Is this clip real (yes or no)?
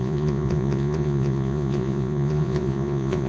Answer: no